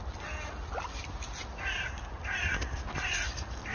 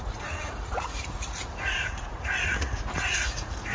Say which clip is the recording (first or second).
first